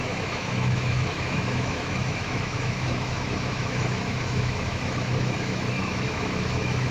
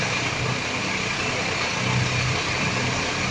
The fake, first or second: first